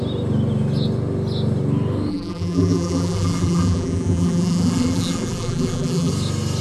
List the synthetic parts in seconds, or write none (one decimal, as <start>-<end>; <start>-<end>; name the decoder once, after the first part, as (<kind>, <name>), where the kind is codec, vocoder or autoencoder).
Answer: 2.1-6.1 (vocoder, BigVGAN v2)

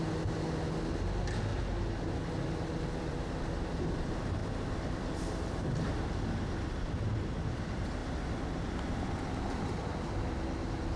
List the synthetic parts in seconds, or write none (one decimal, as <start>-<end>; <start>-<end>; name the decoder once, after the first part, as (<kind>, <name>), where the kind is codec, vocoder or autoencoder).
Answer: 4.4-6.1 (vocoder, BigVGAN v2); 8.0-9.9

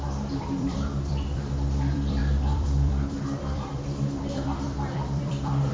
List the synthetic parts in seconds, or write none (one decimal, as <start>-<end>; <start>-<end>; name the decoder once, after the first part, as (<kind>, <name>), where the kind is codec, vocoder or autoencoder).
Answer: 0.0-5.7 (vocoder, BigVGAN v2)

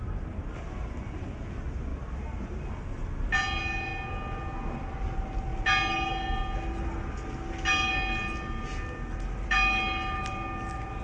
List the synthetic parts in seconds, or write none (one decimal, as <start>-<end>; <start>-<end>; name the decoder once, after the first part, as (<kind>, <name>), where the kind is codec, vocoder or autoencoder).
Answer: none

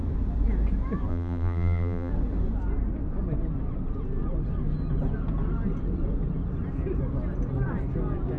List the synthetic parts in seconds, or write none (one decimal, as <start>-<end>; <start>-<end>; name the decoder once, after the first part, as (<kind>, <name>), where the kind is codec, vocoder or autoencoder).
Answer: 1.1-2.1 (vocoder, BigVGAN v2)

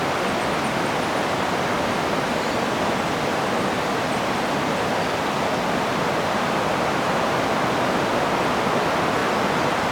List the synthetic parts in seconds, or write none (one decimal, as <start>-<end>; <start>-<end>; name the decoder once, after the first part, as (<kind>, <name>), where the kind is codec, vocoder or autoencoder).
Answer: 9.2-9.9 (vocoder, BigVGAN v2)

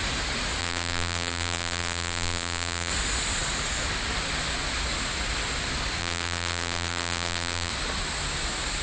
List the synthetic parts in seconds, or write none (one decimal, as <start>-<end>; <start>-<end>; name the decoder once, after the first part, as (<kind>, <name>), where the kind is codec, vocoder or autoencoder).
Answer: 0.6-2.9 (vocoder, BigVGAN v2); 6.0-7.7